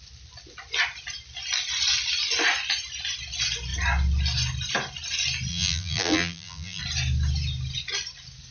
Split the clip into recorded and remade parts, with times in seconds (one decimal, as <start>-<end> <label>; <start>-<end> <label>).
0.0-5.5 recorded; 5.5-6.8 remade; 6.8-8.5 recorded